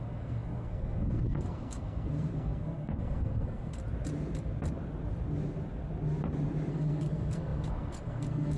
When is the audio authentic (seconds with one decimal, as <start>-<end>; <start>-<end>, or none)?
3.8-6.7